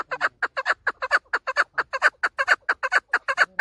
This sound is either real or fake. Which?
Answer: real